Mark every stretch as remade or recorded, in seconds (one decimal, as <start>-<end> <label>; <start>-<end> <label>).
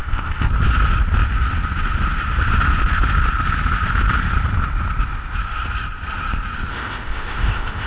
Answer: 0.0-0.5 remade; 0.5-6.7 recorded; 6.7-7.9 remade